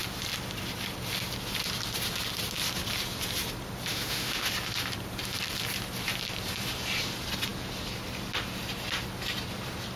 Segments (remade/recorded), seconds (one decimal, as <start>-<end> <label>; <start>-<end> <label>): 0.0-3.9 recorded; 3.9-4.5 remade; 4.5-10.0 recorded